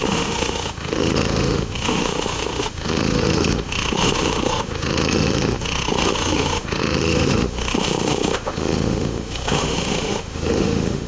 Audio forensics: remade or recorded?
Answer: remade